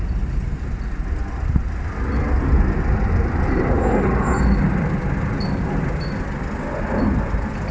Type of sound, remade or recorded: recorded